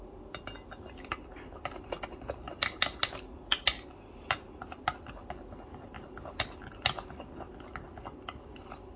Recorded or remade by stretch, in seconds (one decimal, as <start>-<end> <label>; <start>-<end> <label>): 0.0-9.0 recorded